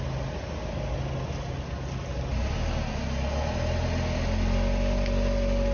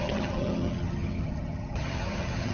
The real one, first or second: first